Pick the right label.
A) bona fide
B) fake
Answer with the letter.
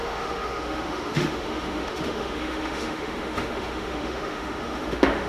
B